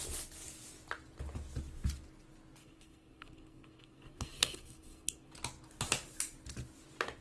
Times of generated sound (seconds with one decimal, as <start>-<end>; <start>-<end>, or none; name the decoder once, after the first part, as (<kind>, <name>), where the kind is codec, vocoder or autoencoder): 2.6-5.3 (codec, SNAC)